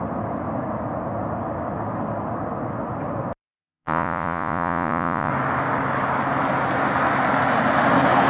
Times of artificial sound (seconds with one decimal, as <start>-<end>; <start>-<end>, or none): 3.6-5.3